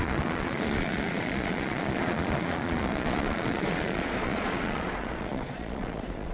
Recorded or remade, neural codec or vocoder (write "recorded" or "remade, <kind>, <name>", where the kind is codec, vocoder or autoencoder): remade, vocoder, Vocos